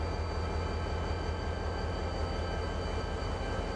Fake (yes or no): no